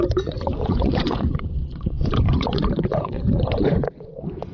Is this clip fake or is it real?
fake